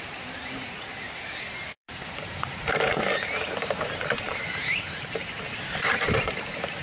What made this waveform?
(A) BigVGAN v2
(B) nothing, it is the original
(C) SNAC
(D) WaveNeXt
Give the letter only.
A